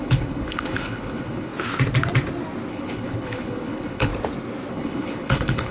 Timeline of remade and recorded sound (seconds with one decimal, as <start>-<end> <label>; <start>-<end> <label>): 0.0-1.5 remade; 1.5-2.7 recorded; 2.7-4.1 remade; 4.1-4.7 recorded; 4.7-5.7 remade